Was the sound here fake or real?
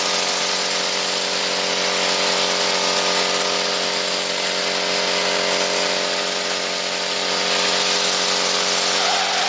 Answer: real